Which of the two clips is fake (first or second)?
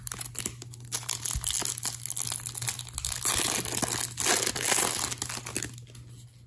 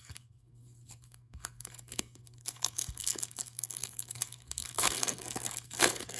second